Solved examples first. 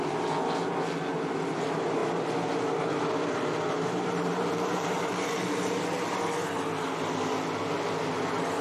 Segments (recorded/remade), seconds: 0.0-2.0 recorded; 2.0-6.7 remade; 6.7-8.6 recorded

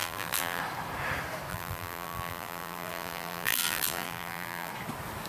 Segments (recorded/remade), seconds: 0.0-0.6 remade; 0.6-1.5 recorded; 1.5-4.7 remade; 4.7-5.3 recorded

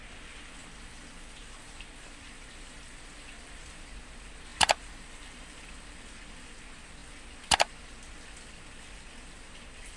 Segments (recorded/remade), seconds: 0.0-0.6 recorded; 0.6-3.9 remade; 3.9-4.5 recorded; 4.5-5.7 remade; 5.7-10.0 recorded

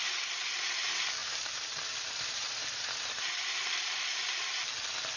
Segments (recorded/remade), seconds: 0.0-1.2 recorded; 1.2-4.3 remade; 4.3-5.2 recorded

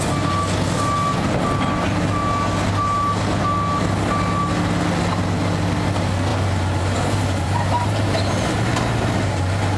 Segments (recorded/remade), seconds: 0.0-6.3 recorded; 6.3-9.4 remade; 9.4-9.8 recorded